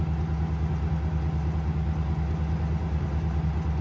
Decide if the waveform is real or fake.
real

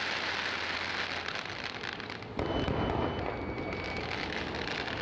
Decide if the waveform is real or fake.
real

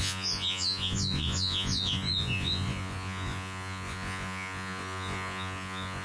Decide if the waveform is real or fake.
fake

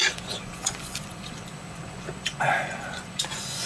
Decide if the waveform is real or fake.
fake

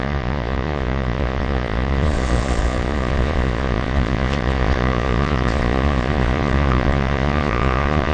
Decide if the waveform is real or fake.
fake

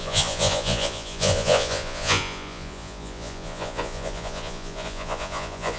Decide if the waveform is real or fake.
fake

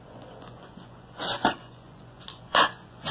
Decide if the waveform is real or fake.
fake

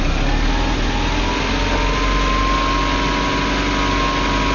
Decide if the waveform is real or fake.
real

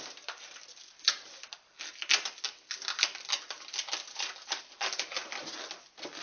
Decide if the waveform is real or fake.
real